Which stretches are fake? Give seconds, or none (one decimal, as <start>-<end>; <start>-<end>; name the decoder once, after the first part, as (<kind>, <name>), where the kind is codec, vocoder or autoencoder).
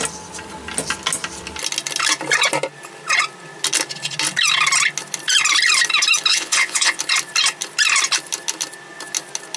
6.3-7.0 (vocoder, Vocos)